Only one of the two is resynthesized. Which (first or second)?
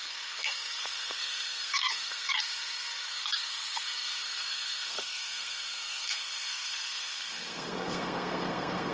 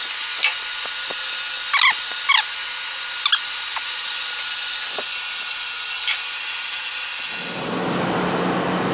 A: first